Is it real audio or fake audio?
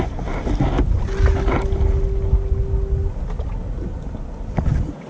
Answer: real